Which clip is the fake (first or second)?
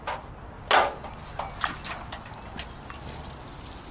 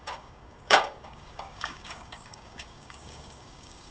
second